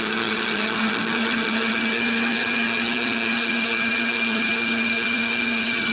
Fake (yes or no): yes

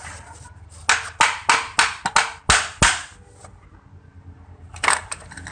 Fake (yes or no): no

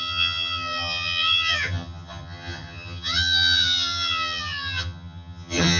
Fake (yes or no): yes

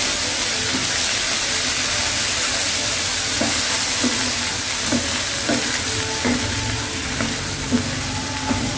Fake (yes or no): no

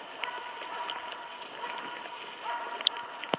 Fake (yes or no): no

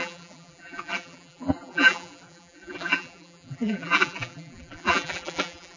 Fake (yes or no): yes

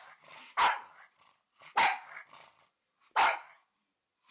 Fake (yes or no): no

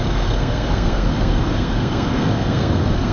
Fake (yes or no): yes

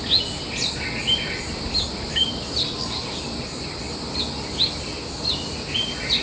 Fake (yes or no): no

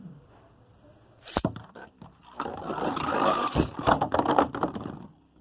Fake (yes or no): no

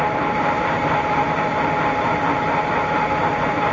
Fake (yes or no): yes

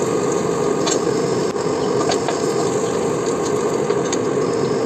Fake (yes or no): no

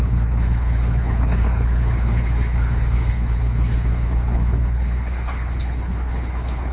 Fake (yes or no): yes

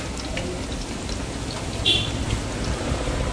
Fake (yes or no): no